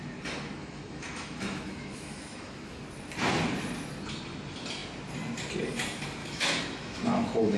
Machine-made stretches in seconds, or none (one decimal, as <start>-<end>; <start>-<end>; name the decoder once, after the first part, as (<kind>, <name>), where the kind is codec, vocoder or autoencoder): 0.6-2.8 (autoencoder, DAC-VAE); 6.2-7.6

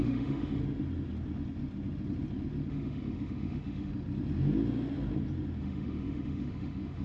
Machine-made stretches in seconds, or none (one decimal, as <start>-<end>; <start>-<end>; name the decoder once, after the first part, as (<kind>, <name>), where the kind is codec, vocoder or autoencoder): 0.0-0.6 (autoencoder, DAC-VAE); 2.7-3.9; 5.6-7.0

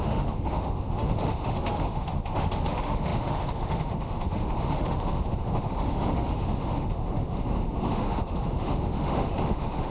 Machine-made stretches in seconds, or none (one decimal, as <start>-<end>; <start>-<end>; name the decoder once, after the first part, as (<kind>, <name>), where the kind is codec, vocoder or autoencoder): 0.0-9.9 (autoencoder, DAC-VAE)